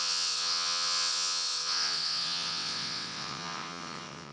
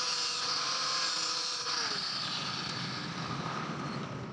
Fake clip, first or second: first